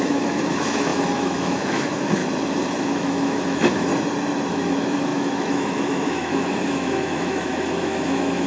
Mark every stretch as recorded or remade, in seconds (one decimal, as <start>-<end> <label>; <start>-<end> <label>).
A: 0.0-2.2 remade; 2.2-2.8 recorded; 2.8-3.9 remade; 3.9-4.5 recorded; 4.5-8.5 remade